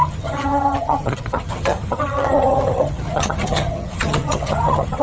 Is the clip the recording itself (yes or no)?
no